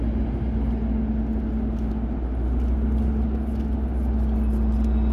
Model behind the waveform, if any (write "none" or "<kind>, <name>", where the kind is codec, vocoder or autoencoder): none